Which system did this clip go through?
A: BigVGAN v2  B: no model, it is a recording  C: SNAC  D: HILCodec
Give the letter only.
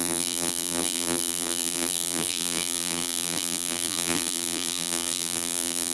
A